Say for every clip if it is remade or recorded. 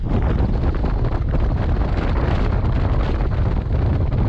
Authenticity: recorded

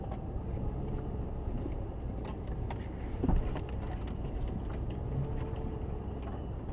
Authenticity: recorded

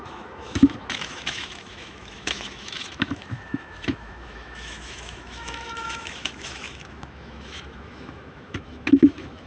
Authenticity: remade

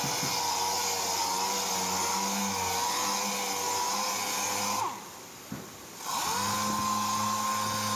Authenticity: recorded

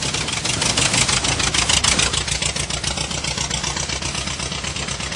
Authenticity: recorded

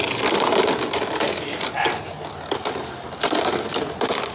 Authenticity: recorded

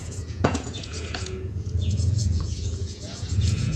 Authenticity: remade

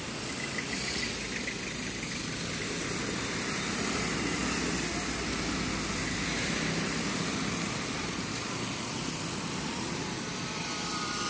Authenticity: recorded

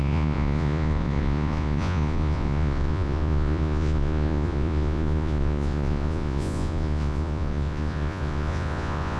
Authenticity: remade